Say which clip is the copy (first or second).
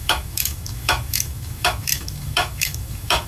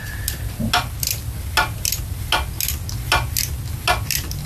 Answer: first